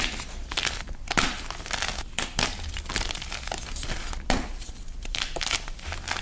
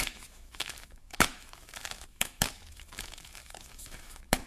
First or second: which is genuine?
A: first